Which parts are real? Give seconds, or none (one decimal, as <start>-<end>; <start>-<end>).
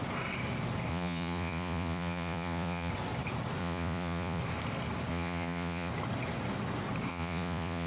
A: 0.0-0.9; 2.9-3.6; 4.4-5.1; 5.9-7.1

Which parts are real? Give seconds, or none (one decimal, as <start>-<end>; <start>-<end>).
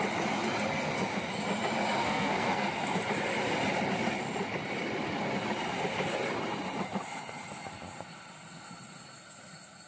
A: 0.0-2.0; 2.7-9.9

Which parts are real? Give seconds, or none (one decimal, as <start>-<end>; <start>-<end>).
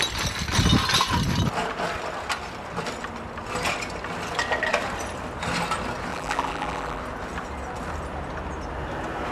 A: 0.0-6.1; 7.0-9.3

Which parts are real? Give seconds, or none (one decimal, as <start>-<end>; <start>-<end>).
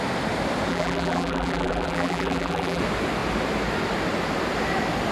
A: 0.0-0.7; 2.8-5.1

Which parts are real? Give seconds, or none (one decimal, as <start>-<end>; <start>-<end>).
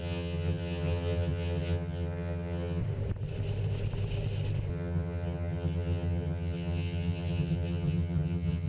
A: 2.8-4.7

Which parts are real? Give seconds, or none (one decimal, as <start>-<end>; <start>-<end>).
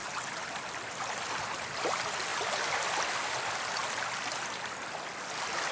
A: 0.0-5.7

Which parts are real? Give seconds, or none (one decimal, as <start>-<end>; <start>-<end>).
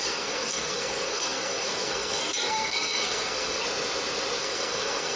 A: 3.6-4.4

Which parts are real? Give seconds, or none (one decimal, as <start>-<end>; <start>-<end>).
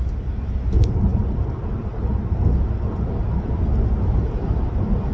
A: 0.0-5.1